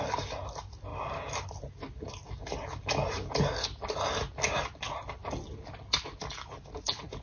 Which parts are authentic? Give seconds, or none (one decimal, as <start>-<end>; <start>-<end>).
0.0-7.2